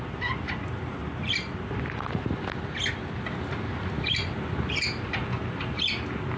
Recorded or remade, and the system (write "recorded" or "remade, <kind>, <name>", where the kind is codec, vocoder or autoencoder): recorded